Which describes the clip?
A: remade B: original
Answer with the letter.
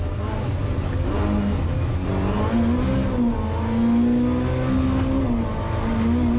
B